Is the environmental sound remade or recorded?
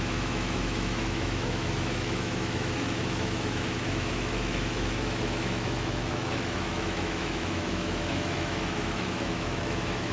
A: remade